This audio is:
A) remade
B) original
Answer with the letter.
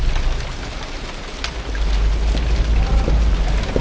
B